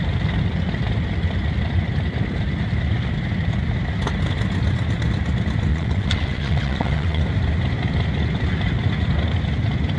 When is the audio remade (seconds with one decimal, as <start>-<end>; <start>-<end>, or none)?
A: 5.7-7.2